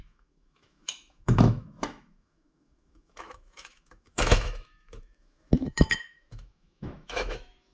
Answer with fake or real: fake